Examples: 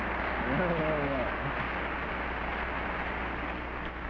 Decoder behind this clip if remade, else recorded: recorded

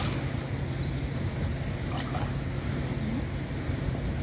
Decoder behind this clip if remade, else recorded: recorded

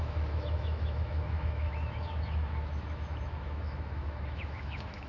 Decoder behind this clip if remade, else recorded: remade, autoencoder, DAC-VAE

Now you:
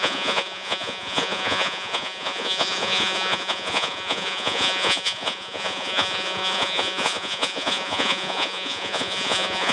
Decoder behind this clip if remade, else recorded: remade, vocoder, Vocos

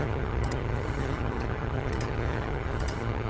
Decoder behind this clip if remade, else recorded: remade, vocoder, HiFi-GAN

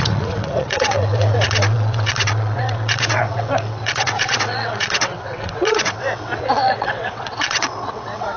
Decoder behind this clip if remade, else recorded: remade, vocoder, WaveNeXt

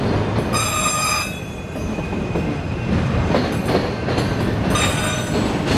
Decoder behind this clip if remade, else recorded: recorded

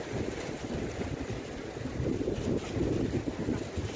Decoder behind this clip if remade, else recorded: recorded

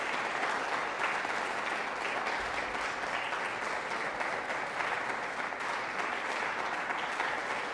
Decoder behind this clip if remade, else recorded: recorded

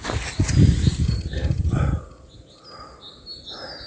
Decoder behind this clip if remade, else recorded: recorded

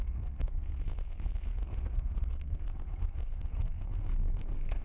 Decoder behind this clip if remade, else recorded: remade, codec, SNAC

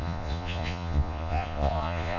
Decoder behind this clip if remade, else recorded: remade, vocoder, Vocos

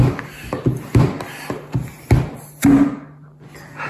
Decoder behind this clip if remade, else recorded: recorded